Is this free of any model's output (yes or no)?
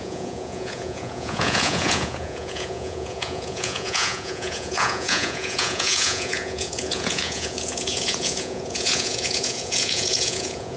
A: no